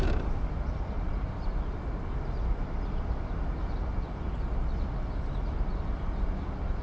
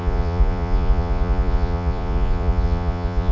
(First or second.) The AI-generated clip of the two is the second